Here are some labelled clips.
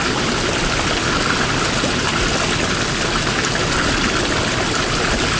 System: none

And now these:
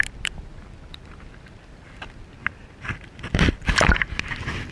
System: none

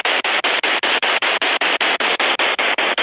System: vocoder, BigVGAN v2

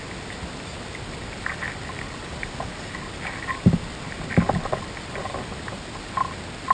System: none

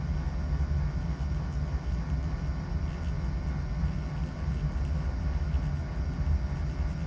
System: none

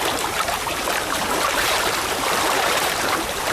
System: vocoder, BigVGAN v2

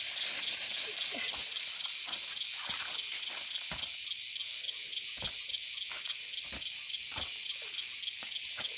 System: vocoder, BigVGAN v2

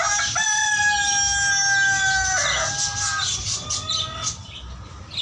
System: none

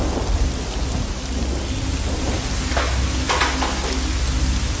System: none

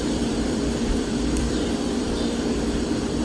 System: vocoder, BigVGAN v2